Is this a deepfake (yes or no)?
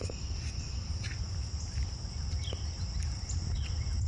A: no